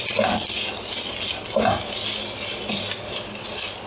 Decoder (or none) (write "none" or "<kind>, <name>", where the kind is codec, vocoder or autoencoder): none